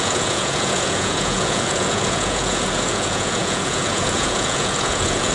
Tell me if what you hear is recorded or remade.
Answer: remade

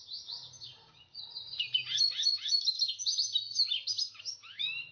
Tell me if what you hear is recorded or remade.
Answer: recorded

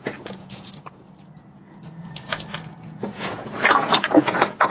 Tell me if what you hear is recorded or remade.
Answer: remade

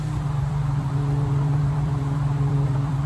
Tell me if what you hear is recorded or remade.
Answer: remade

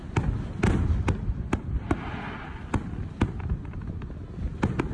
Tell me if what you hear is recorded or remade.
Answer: recorded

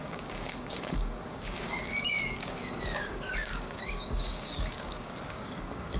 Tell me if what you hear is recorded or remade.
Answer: remade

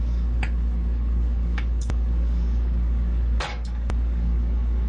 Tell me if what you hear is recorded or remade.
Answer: remade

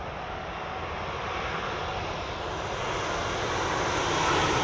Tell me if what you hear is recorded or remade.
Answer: recorded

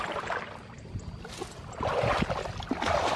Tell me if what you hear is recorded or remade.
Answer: recorded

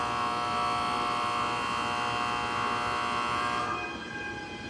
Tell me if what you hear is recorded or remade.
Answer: recorded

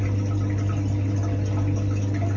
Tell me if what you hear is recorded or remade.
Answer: recorded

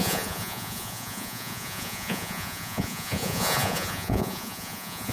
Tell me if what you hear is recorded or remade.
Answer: remade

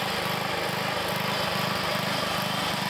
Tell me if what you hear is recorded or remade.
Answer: recorded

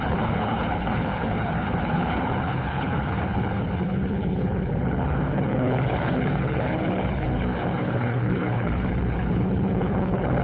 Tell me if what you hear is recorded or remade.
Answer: remade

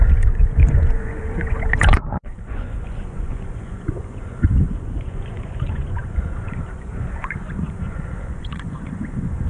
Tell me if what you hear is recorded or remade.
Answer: remade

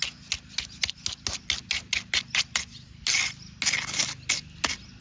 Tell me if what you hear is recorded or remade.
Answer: recorded